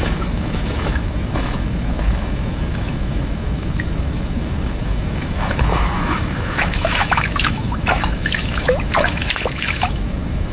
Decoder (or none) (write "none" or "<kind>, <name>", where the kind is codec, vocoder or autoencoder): autoencoder, DAC-VAE